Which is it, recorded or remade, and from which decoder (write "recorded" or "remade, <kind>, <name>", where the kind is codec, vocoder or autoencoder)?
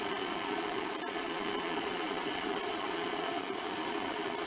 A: remade, vocoder, Vocos